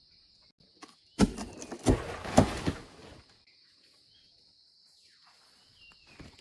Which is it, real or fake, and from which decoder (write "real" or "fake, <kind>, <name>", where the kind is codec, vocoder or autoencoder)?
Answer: real